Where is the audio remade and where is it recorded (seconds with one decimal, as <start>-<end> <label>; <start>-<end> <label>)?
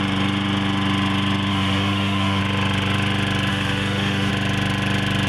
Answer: 0.0-1.5 recorded; 1.5-2.4 remade; 2.4-3.5 recorded; 3.5-4.3 remade; 4.3-5.3 recorded